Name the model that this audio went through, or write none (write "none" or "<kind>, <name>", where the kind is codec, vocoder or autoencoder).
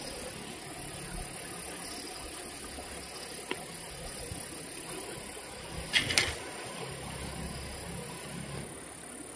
none